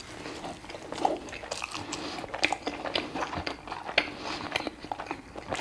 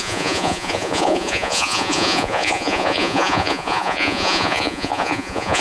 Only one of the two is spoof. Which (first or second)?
second